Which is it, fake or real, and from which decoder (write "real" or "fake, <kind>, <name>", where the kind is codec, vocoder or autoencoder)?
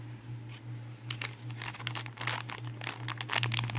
real